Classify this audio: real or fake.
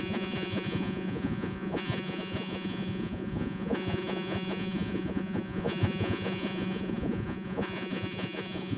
fake